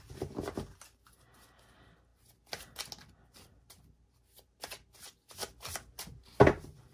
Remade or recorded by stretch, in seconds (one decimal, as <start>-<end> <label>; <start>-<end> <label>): 0.0-6.9 recorded